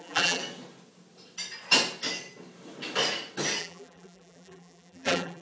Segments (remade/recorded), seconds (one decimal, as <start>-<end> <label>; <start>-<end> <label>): 0.0-0.4 remade; 0.4-3.6 recorded; 3.6-5.4 remade